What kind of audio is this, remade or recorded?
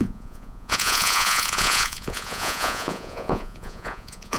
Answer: remade